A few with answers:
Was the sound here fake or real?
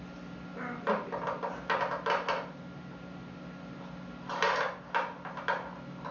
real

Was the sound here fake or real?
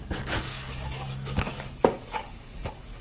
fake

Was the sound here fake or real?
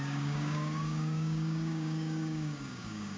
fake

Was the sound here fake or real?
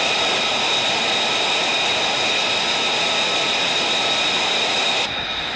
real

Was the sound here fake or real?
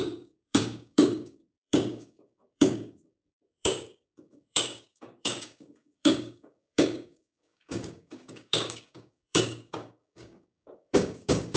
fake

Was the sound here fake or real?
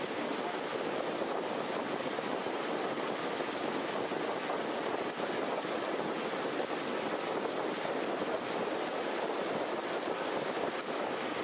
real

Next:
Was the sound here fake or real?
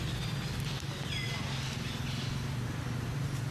real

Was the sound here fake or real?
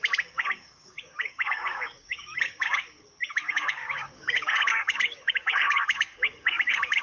fake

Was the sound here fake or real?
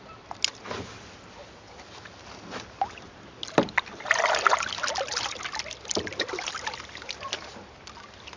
real